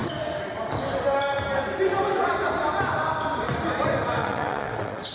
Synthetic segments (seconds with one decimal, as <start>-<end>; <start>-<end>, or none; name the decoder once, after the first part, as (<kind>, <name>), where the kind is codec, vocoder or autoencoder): 4.2-5.1 (vocoder, WaveNeXt)